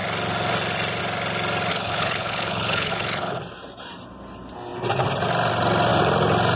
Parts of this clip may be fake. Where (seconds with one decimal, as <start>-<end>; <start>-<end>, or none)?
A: 1.7-3.4